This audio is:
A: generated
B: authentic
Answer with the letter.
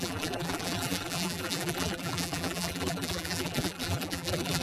A